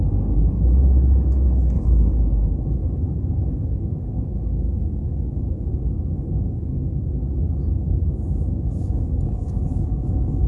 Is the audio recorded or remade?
remade